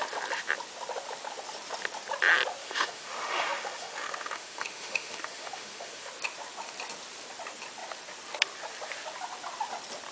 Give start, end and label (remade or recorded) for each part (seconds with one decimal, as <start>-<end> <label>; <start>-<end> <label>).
0.0-2.6 recorded; 2.6-6.1 remade; 6.1-10.1 recorded